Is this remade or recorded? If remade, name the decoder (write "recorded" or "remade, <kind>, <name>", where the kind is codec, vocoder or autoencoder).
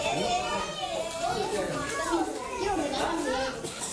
recorded